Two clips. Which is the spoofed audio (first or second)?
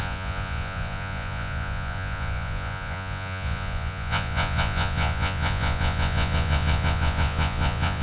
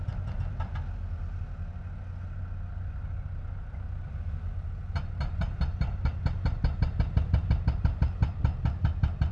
first